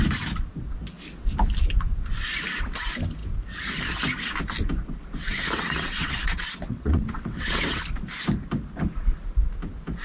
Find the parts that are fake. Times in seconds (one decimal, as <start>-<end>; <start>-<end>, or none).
5.2-7.8